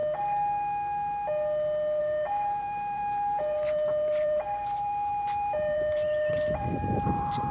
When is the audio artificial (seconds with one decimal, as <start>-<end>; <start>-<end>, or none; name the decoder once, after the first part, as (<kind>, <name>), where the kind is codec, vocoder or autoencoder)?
2.0-7.5 (vocoder, BigVGAN v2)